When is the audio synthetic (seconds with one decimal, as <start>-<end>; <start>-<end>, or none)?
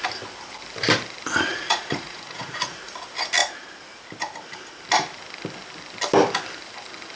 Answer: 1.5-2.9